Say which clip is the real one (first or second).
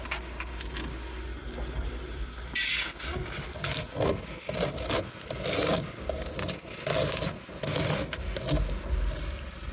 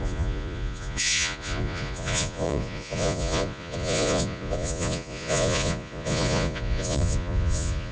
first